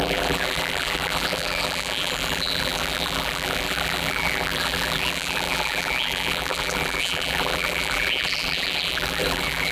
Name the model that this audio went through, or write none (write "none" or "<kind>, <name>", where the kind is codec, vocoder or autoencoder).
vocoder, BigVGAN v2